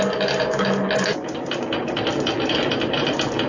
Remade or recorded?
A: recorded